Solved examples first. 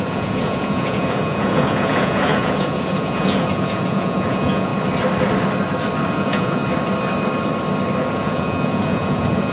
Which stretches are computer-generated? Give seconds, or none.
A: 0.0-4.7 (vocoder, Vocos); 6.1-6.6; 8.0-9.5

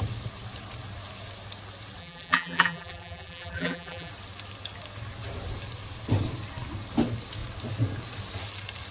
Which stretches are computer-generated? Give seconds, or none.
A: 2.0-4.1 (vocoder, BigVGAN v2)

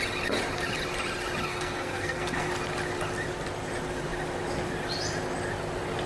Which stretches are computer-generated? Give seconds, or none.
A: 1.5-2.5 (codec, SNAC)

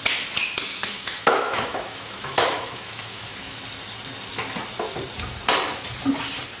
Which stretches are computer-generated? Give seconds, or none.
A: 0.7-3.6 (autoencoder, DAC-VAE)

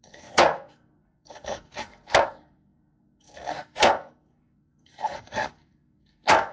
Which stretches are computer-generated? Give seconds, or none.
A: 0.0-6.5 (codec, SNAC)

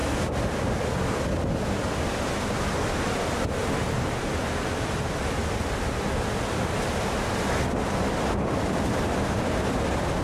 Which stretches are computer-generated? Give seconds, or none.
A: 4.8-5.4 (vocoder, BigVGAN v2); 7.2-10.2

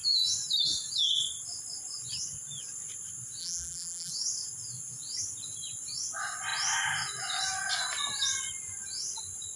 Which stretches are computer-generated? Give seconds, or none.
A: 3.4-4.1 (vocoder, BigVGAN v2)

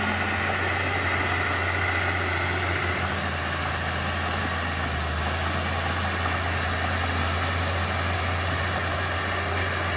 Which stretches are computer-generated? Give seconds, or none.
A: none